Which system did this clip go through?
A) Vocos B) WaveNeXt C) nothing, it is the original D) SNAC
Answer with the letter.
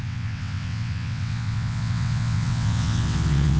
B